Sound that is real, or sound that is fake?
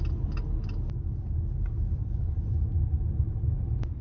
real